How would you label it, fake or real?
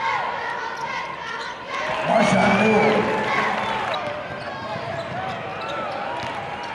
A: real